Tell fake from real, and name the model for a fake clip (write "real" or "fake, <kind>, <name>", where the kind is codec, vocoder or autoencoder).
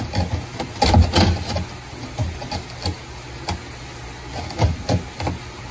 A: real